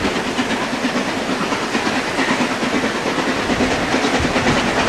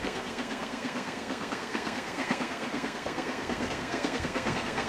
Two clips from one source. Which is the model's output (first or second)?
second